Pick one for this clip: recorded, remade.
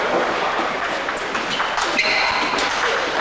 recorded